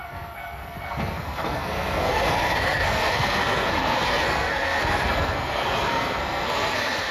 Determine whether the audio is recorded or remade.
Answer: remade